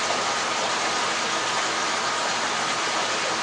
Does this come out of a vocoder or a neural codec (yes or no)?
no